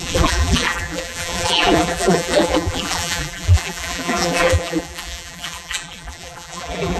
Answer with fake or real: fake